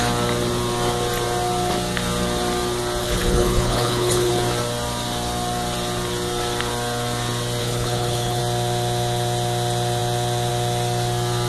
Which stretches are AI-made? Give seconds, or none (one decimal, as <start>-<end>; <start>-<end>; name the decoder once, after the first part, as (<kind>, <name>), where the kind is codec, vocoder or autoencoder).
3.0-4.3 (codec, HILCodec); 7.6-8.4